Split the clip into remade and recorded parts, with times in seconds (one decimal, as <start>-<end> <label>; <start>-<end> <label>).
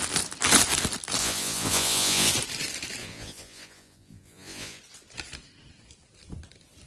0.0-1.2 recorded; 1.2-2.3 remade; 2.3-3.0 recorded; 3.0-4.8 remade; 4.8-6.9 recorded